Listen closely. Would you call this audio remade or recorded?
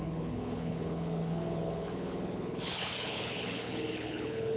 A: remade